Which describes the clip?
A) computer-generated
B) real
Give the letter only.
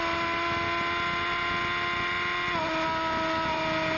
B